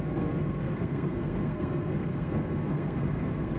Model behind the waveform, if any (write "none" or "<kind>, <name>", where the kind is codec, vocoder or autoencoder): codec, SNAC